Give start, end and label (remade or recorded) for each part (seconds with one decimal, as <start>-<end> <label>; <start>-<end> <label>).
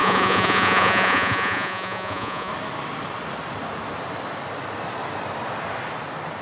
0.0-2.5 remade; 2.5-6.4 recorded